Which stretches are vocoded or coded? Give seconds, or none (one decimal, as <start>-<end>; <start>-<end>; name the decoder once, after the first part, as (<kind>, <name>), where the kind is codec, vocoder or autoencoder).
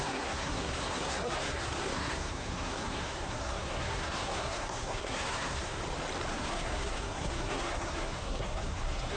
0.0-5.8 (codec, SNAC); 6.3-9.2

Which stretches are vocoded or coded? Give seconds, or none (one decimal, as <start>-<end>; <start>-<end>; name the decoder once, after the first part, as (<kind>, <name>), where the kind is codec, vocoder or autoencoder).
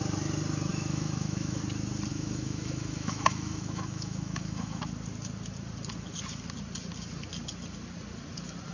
0.7-1.6 (autoencoder, DAC-VAE); 2.1-4.8